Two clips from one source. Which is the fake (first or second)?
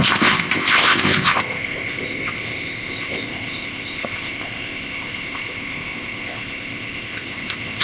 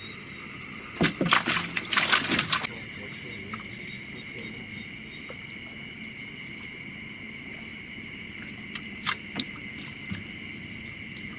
first